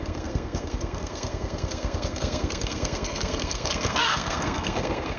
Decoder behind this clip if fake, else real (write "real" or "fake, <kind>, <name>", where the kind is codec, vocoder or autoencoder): fake, codec, SNAC